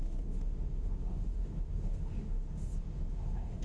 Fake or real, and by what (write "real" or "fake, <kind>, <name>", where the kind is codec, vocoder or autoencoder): fake, autoencoder, DAC-VAE